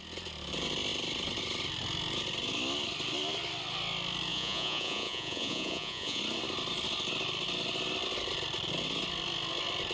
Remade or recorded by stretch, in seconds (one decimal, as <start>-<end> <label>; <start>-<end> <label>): 0.0-4.3 recorded; 4.3-6.2 remade; 6.2-9.9 recorded